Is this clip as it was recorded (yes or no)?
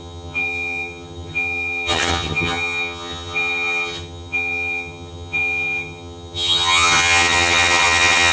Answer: no